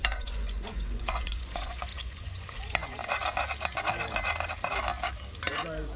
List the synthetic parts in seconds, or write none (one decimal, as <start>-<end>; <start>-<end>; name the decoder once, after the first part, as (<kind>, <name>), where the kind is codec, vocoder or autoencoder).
0.0-3.0 (vocoder, Vocos)